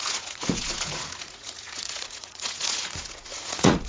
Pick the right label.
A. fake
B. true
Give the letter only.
A